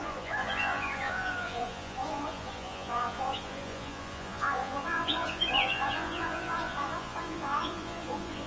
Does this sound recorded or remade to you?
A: remade